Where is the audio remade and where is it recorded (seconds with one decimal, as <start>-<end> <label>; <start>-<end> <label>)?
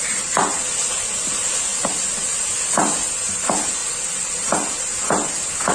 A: 0.0-5.7 recorded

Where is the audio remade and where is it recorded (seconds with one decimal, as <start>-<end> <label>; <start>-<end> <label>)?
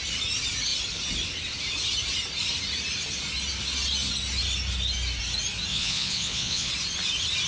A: 0.0-5.7 recorded; 5.7-6.7 remade; 6.7-7.5 recorded